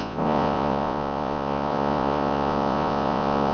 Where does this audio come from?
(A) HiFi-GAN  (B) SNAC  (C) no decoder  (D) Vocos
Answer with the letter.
D